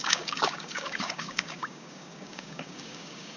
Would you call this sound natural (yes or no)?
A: no